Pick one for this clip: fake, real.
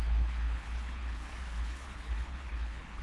fake